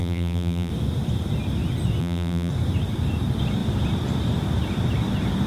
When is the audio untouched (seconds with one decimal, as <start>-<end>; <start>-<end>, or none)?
0.7-2.0; 2.5-5.5